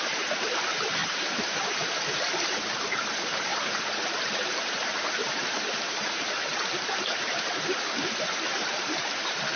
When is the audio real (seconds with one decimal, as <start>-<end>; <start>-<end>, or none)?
none